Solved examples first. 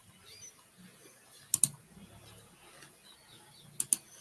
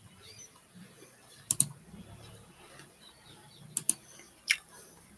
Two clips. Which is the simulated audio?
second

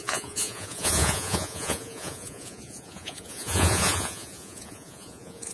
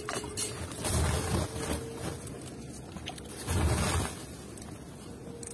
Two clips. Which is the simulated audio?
first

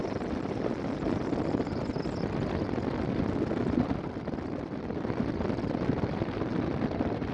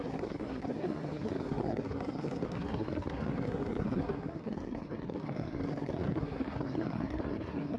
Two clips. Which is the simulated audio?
second